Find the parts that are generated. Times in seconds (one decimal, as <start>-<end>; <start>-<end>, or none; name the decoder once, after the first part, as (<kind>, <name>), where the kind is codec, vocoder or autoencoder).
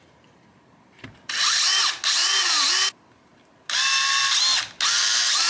2.2-2.9 (vocoder, BigVGAN v2)